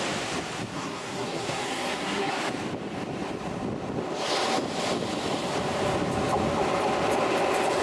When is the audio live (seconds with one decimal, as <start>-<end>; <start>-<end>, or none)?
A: 0.0-0.7; 2.3-7.8